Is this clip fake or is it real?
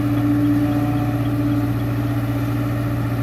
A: fake